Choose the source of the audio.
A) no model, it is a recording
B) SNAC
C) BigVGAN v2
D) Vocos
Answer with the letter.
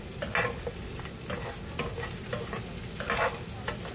A